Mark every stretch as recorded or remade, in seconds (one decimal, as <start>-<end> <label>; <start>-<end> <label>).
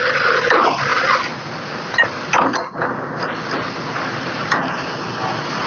0.0-5.7 recorded